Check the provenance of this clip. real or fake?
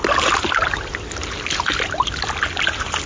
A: real